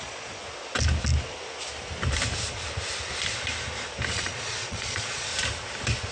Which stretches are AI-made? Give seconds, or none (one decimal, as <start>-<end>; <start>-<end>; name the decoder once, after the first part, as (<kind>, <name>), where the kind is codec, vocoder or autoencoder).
0.0-0.4 (vocoder, Vocos); 4.1-5.3